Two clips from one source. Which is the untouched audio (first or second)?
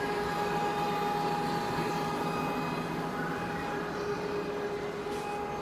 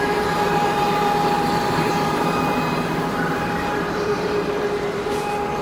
first